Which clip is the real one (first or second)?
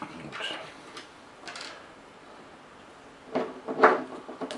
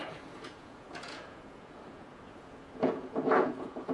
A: first